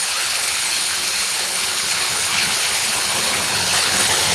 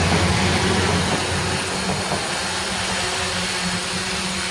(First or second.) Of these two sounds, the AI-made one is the first